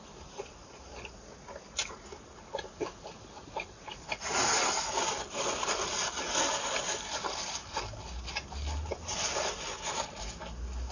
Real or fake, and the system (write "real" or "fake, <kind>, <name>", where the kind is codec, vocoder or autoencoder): real